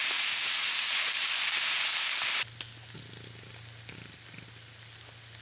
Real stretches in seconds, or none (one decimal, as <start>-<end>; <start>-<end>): 1.1-5.4